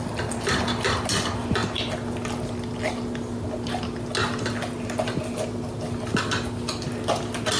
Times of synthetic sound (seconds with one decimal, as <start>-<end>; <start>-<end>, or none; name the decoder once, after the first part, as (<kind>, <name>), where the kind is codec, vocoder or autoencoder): none